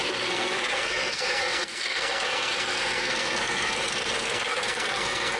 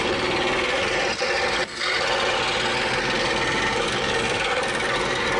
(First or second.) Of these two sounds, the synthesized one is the first